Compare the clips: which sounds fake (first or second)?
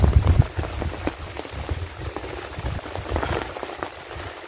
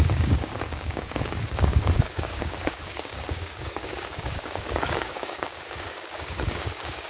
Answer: second